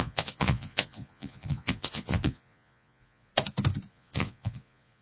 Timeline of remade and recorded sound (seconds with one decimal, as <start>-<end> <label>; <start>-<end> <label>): 0.0-3.3 remade; 3.3-3.9 recorded; 3.9-5.0 remade